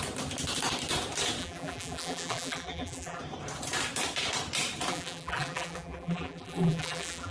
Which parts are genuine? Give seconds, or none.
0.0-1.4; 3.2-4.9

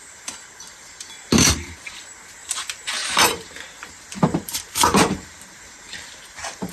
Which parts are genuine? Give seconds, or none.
0.0-1.5; 2.0-2.4; 5.6-6.7